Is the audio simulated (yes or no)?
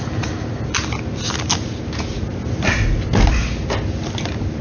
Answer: no